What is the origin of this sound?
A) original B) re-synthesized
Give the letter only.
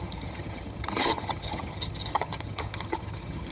B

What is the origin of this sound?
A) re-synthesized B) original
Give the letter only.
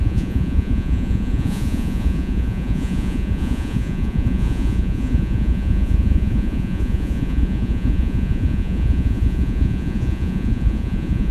A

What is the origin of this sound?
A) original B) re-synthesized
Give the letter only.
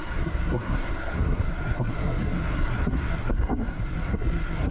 B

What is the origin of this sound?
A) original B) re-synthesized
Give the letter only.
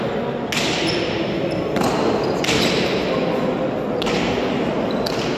A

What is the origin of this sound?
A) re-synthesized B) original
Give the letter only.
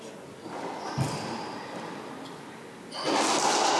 B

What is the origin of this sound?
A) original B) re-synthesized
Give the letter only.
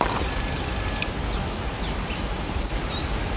A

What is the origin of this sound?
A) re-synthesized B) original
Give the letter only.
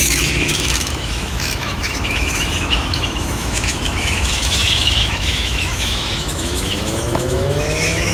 A